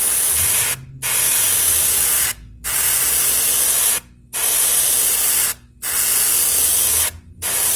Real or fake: real